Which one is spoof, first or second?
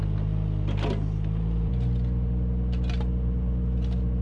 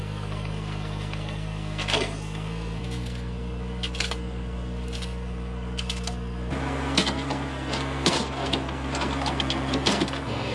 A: second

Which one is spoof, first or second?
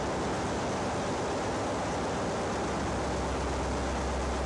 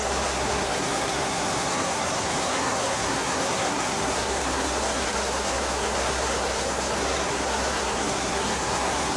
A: second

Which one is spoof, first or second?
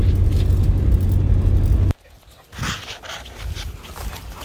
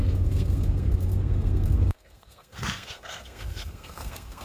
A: second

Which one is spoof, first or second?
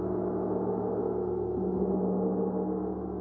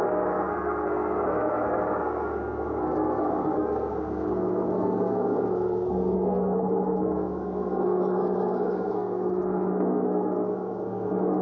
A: second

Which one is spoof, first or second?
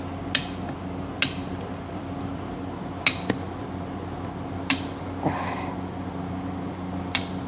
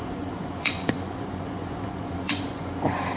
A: second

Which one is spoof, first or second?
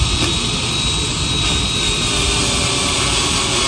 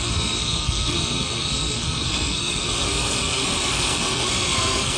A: second